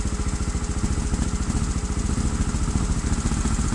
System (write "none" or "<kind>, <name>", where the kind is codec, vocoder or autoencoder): none